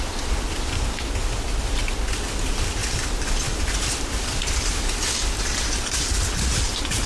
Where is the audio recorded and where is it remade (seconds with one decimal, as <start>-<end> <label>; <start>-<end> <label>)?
0.0-2.8 recorded; 2.8-5.1 remade; 5.1-7.1 recorded